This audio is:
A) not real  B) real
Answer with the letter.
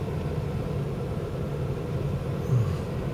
B